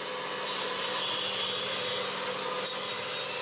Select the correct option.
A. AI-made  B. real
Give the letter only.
B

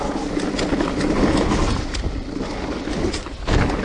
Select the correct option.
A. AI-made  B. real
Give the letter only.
B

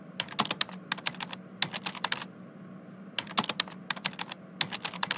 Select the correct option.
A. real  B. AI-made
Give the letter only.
A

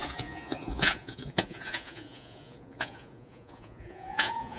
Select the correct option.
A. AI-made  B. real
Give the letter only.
A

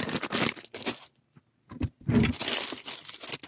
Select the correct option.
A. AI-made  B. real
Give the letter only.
B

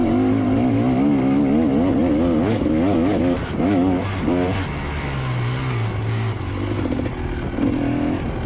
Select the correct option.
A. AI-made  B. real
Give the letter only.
B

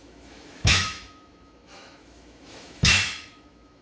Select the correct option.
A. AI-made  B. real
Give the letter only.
A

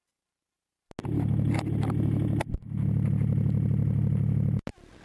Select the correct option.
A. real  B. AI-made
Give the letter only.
A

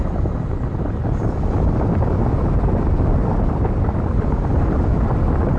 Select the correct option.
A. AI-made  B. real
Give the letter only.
B